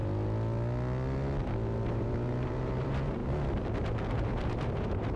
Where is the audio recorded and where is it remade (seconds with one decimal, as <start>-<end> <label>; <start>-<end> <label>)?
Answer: 0.0-1.9 recorded; 1.9-3.2 remade; 3.2-3.8 recorded; 3.8-5.2 remade